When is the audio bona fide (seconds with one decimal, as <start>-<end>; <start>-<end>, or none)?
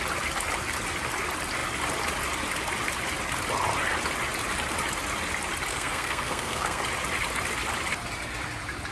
0.0-5.7; 6.8-8.9